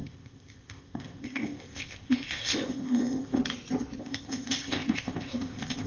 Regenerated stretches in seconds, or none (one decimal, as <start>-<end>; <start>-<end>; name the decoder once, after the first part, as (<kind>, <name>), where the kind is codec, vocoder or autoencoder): 0.0-3.4 (codec, ZipCodec); 4.0-5.9